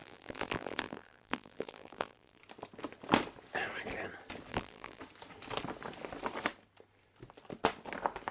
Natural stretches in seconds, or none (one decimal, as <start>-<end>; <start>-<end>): 2.4-4.5; 5.0-8.3